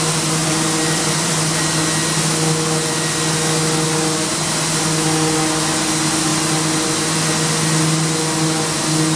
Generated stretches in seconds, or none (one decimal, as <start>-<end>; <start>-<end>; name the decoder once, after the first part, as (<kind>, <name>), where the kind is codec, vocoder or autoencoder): 0.4-1.4 (vocoder, BigVGAN v2)